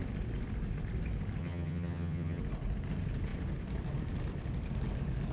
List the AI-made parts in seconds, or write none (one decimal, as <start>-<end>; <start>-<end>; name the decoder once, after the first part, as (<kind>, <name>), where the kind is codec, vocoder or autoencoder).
1.4-2.4 (vocoder, HiFi-GAN)